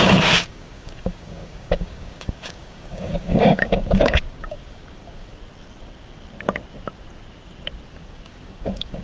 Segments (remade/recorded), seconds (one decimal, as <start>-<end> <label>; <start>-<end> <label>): 0.0-5.3 remade; 5.3-7.9 recorded; 7.9-9.0 remade